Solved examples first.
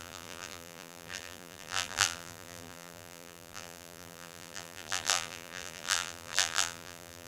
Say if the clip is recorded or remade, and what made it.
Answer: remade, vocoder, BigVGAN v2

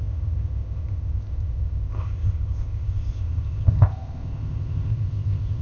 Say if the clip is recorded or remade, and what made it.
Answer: remade, codec, ZipCodec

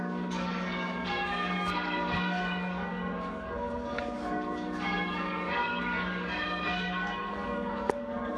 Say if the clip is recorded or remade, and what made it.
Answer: remade, codec, DAC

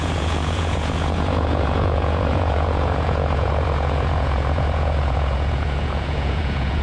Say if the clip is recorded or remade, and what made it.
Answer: remade, vocoder, Vocos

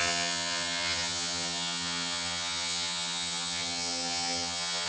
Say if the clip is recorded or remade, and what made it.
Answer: remade, vocoder, HiFi-GAN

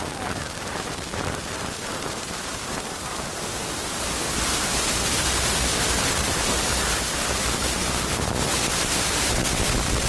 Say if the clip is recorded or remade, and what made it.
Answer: remade, vocoder, BigVGAN v2